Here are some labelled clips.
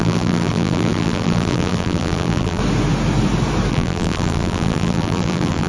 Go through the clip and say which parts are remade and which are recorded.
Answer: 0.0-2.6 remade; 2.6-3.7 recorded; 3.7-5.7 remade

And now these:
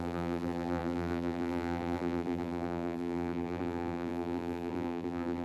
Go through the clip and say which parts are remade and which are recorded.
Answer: 0.0-5.4 remade

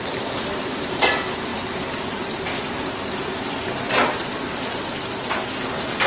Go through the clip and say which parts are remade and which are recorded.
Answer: 0.0-0.5 recorded; 0.5-1.1 remade; 1.1-1.5 recorded; 1.5-3.1 remade; 3.1-6.1 recorded

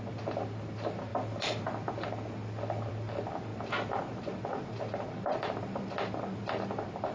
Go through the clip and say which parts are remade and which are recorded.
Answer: 0.0-1.1 recorded; 1.1-2.9 remade; 2.9-3.5 recorded; 3.5-4.5 remade; 4.5-7.1 recorded

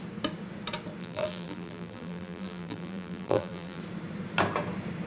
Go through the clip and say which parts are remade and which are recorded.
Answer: 0.0-1.0 recorded; 1.0-3.8 remade; 3.8-5.1 recorded